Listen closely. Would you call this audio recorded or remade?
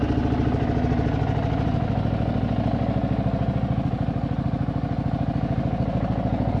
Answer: recorded